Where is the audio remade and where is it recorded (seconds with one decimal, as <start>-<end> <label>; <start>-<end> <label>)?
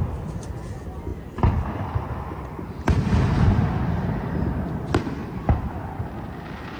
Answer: 0.0-5.2 recorded; 5.2-5.8 remade; 5.8-6.8 recorded